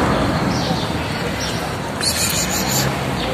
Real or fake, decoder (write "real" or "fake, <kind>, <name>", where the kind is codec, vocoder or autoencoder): real